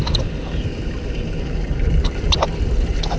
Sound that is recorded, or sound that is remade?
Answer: recorded